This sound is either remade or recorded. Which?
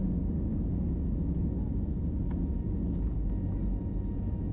recorded